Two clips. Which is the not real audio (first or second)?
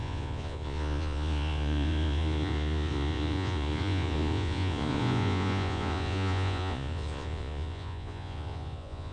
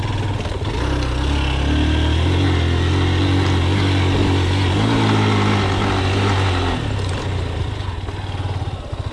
first